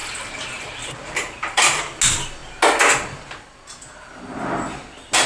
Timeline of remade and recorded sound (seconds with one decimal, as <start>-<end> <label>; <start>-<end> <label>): 0.0-1.8 remade; 1.8-5.3 recorded